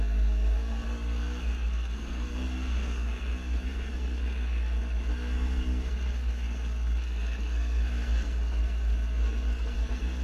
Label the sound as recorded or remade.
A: remade